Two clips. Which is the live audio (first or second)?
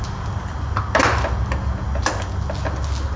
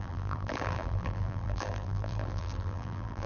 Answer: first